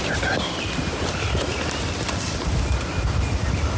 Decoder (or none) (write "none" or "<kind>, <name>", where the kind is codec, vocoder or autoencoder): none